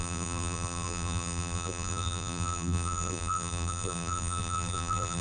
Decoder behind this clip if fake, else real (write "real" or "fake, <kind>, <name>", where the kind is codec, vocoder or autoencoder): fake, vocoder, BigVGAN v2